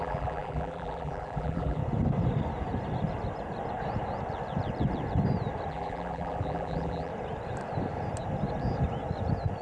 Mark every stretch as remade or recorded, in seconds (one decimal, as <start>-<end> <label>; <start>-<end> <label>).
0.0-1.8 remade; 1.8-5.7 recorded; 5.7-7.1 remade; 7.1-9.6 recorded